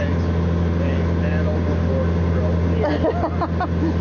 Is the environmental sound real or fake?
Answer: real